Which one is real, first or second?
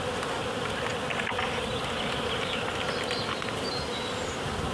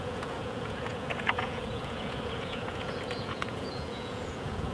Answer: first